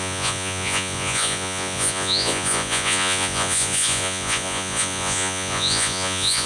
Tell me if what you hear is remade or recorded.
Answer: remade